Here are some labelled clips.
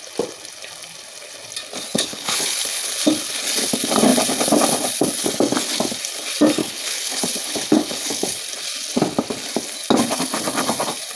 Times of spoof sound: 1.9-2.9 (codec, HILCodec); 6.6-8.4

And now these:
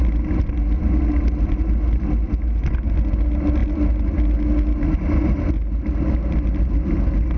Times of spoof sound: none

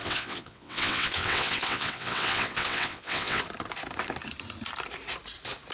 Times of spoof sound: 0.0-3.4 (vocoder, WaveNeXt)